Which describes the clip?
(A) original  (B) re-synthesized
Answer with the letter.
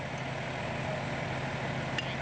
A